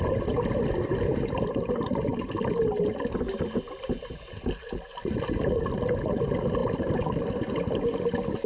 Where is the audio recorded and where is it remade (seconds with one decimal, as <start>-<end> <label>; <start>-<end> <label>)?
0.0-8.5 recorded